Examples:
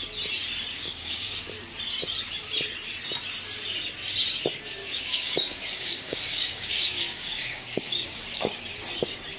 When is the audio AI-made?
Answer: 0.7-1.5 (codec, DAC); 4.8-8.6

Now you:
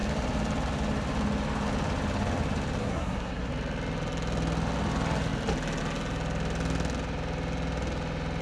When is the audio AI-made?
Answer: 2.8-3.5 (codec, SNAC)